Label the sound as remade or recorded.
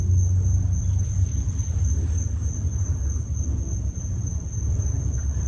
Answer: recorded